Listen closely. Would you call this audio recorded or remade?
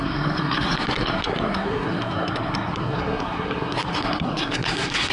remade